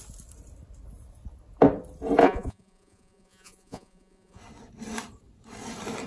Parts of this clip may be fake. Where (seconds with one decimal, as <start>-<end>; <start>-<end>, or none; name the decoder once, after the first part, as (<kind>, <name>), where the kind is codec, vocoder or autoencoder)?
2.2-4.4 (vocoder, Vocos)